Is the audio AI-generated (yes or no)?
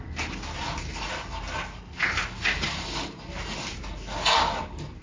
no